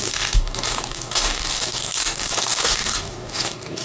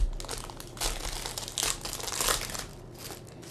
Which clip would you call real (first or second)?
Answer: second